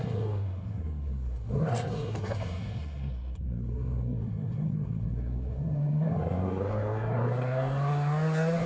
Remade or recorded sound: remade